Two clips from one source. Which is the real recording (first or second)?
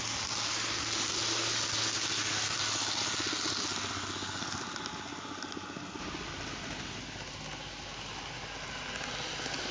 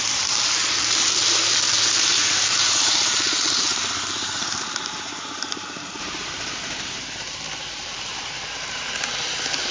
first